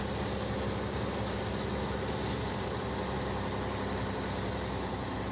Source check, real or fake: real